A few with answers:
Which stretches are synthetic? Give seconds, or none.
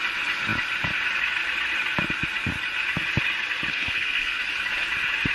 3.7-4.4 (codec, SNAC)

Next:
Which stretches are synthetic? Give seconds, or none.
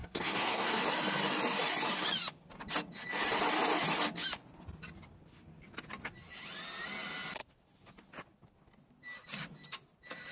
0.0-0.8 (codec, SNAC)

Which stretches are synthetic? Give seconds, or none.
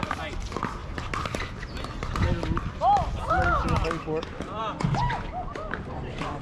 none